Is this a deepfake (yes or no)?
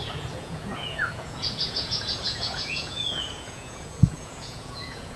yes